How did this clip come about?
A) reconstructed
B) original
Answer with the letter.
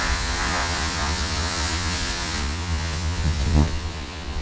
A